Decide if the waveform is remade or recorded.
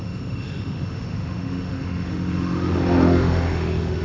remade